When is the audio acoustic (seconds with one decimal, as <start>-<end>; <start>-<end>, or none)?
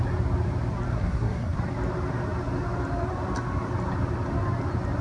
0.0-0.9; 1.6-5.0